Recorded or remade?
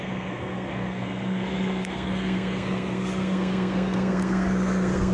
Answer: remade